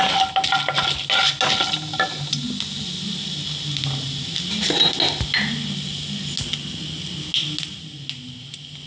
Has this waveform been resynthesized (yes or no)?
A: no